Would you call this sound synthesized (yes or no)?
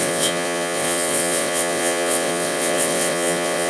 yes